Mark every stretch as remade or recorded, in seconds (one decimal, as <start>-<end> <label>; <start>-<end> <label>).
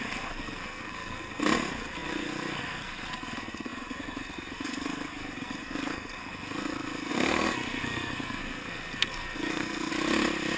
0.0-9.9 remade; 9.9-10.6 recorded